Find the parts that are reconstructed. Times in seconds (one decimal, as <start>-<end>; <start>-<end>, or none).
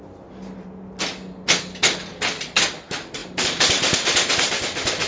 3.2-4.3